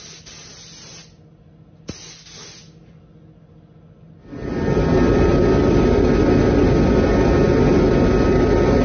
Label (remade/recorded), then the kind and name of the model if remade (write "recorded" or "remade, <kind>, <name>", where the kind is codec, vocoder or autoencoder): recorded